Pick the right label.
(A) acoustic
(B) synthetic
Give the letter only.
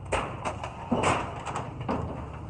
A